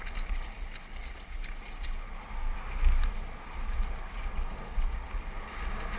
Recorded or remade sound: recorded